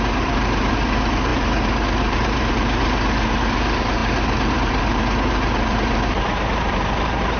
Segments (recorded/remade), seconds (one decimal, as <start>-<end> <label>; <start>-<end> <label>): 0.0-7.4 remade

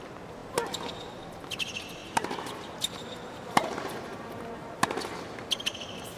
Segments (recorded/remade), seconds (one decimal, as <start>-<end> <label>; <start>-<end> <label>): 0.0-2.0 recorded; 2.0-4.7 remade; 4.7-6.2 recorded

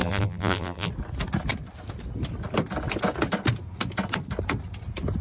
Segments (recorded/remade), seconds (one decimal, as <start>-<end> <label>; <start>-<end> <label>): 0.0-0.9 remade; 0.9-5.2 recorded

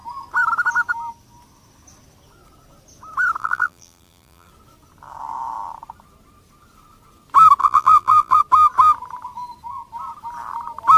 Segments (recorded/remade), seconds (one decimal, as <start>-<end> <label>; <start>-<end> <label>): 0.0-3.4 recorded; 3.4-4.5 remade; 4.5-7.6 recorded; 7.6-8.4 remade; 8.4-11.0 recorded